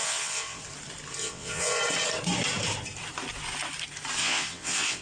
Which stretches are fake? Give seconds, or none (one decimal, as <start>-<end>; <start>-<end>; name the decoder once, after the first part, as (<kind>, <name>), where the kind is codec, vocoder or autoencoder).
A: 0.0-0.6 (vocoder, WaveNeXt); 1.2-1.8; 4.2-5.0